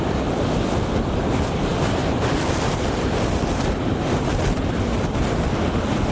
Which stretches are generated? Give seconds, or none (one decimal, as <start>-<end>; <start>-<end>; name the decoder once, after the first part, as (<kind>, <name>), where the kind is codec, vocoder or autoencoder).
1.7-4.6 (vocoder, BigVGAN v2)